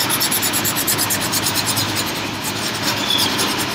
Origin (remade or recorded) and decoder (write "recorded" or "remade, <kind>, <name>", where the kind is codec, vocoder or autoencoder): recorded